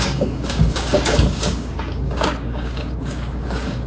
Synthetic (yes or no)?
yes